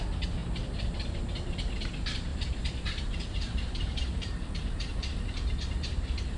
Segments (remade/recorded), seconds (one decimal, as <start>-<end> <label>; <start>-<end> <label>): 0.0-2.3 recorded; 2.3-6.4 remade